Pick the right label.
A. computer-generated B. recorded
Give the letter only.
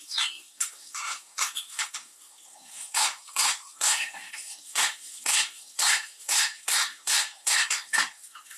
A